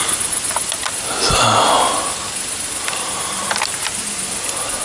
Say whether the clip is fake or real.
real